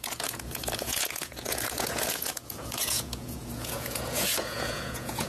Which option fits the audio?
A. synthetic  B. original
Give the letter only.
A